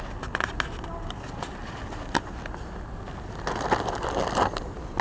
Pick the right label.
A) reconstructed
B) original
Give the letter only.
B